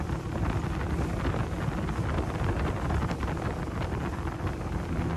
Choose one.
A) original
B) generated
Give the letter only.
A